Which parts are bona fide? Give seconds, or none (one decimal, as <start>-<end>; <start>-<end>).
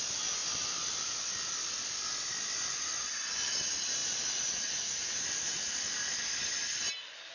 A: 0.0-0.4; 2.7-7.3